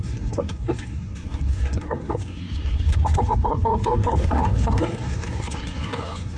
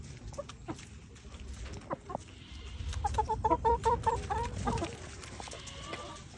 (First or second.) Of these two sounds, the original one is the second